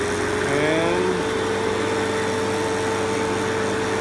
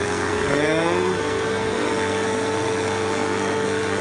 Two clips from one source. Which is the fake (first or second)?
second